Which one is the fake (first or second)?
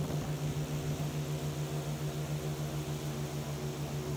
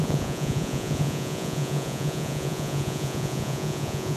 second